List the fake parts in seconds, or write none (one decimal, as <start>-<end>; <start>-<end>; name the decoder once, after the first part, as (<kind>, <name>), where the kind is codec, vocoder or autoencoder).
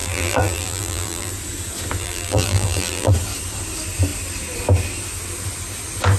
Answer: 0.0-1.3 (vocoder, BigVGAN v2); 2.0-3.1